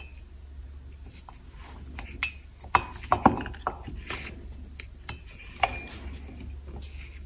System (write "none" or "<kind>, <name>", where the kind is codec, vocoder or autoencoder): none